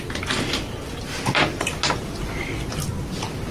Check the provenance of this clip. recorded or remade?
recorded